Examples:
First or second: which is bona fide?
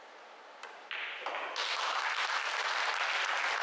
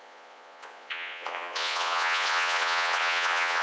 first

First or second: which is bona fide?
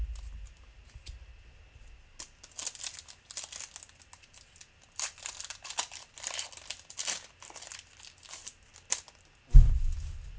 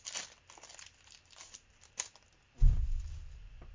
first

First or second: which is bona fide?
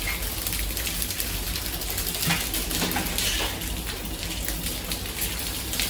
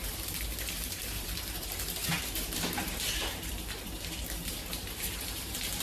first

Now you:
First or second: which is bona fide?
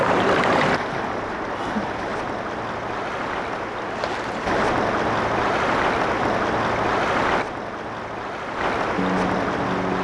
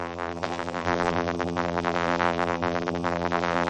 first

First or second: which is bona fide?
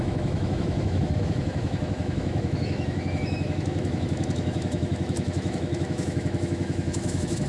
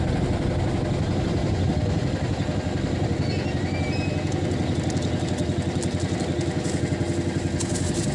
second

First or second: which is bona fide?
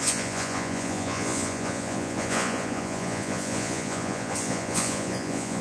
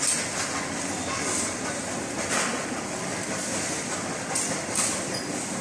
second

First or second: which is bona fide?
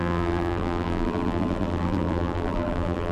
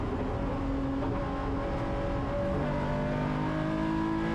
second